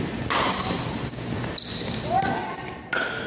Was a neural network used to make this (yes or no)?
yes